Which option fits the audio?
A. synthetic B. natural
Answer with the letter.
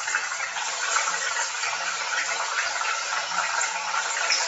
B